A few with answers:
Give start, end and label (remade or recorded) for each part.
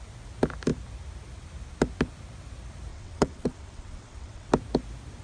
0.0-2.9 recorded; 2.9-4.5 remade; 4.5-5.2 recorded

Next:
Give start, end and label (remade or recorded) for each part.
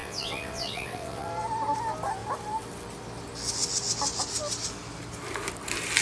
0.0-1.3 remade; 1.3-6.0 recorded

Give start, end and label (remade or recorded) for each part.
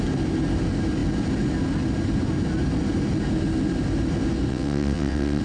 0.0-4.5 recorded; 4.5-5.4 remade